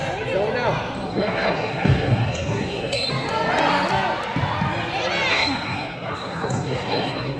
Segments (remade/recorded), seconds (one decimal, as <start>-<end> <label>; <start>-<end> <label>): 0.0-1.1 recorded; 1.1-3.1 remade; 3.1-5.3 recorded; 5.3-7.4 remade